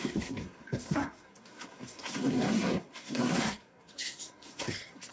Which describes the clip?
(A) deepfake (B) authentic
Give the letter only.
A